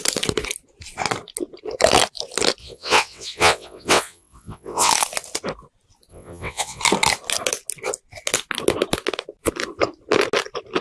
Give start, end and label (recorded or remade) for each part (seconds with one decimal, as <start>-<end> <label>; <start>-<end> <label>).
0.0-2.6 recorded; 2.6-4.9 remade; 4.9-6.1 recorded; 6.1-6.8 remade; 6.8-10.8 recorded